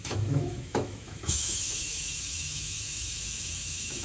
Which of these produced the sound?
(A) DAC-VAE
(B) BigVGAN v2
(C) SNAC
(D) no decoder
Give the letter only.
A